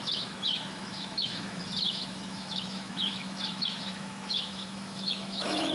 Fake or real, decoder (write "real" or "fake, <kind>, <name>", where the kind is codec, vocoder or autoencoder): fake, autoencoder, DAC-VAE